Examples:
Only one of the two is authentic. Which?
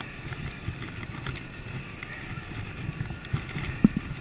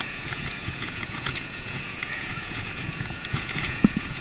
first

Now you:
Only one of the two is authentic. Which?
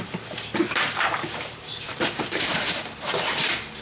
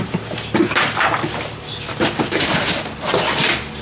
second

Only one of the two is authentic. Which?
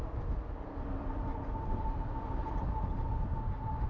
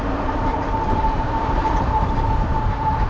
first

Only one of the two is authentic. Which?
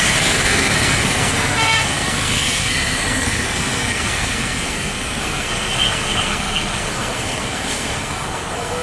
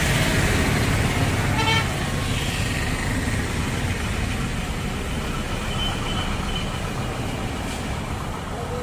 second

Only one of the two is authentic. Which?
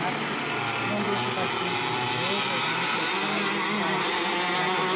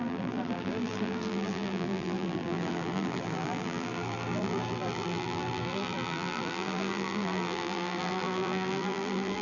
first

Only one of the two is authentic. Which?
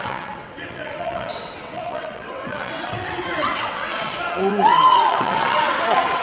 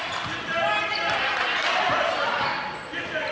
second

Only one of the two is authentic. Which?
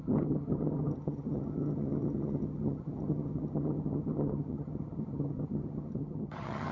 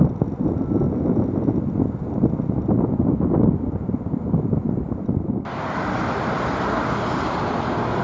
second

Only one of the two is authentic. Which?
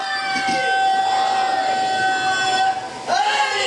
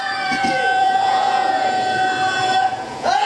first